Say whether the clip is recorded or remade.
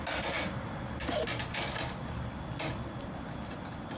recorded